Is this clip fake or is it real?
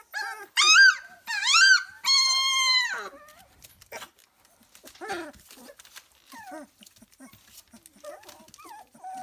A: real